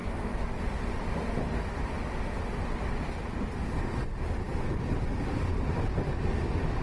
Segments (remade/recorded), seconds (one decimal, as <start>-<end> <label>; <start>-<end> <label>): 0.0-6.8 recorded